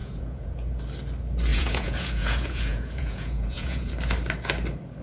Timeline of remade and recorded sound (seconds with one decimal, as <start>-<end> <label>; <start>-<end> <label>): 0.0-0.8 remade; 0.8-1.5 recorded; 1.5-3.9 remade; 3.9-5.0 recorded